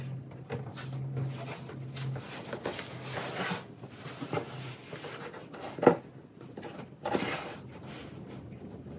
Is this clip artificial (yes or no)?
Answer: no